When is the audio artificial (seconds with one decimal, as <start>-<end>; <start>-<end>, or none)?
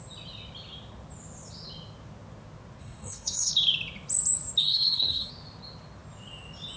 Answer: 2.8-3.5; 4.6-5.3